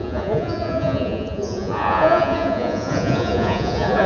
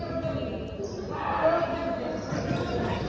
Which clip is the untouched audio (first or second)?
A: second